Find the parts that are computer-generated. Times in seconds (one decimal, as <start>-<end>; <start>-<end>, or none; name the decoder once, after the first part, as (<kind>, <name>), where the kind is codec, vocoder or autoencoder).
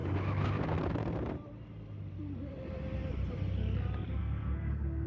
4.2-5.1 (codec, SNAC)